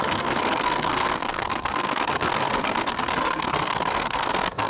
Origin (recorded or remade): remade